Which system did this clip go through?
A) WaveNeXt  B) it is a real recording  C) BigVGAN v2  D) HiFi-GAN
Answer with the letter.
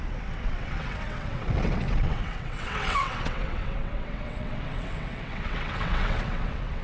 A